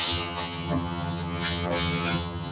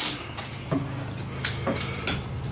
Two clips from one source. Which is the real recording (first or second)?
second